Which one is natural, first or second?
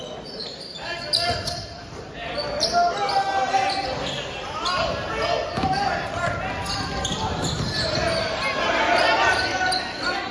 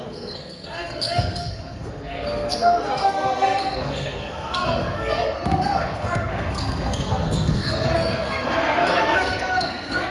first